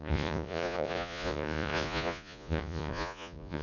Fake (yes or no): yes